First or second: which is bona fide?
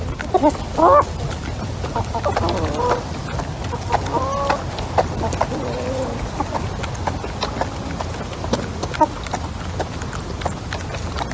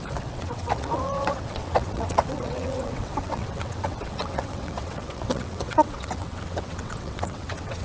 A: first